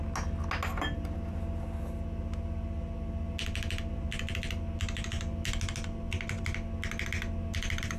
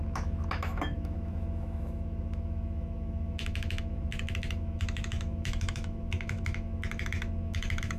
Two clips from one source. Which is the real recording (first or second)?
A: first